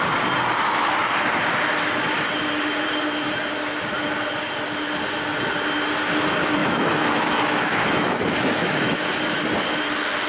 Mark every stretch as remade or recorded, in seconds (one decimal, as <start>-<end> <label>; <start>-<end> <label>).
0.0-6.6 recorded; 6.6-9.0 remade; 9.0-10.3 recorded